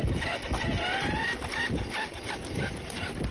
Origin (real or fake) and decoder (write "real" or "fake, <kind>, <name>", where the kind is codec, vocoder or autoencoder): real